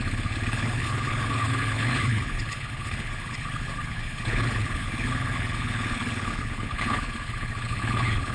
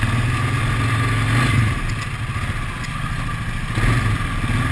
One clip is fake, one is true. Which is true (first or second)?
second